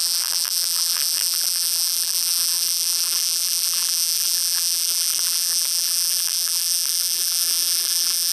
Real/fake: fake